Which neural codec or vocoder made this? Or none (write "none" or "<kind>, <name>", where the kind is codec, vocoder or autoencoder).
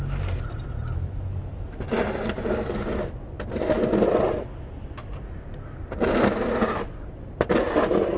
none